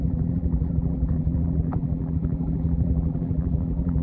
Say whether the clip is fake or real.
fake